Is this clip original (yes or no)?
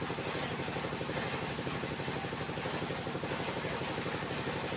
yes